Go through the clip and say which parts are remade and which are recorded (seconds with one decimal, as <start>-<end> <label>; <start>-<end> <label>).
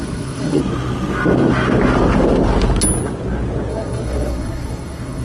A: 0.0-0.6 remade; 0.6-3.7 recorded; 3.7-5.2 remade